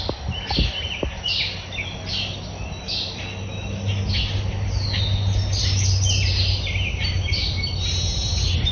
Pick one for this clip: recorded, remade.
recorded